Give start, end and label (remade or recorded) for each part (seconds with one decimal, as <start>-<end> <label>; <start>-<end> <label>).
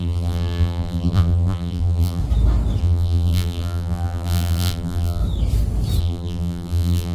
0.0-2.2 remade; 2.2-2.8 recorded; 2.8-5.2 remade; 5.2-6.0 recorded; 6.0-7.1 remade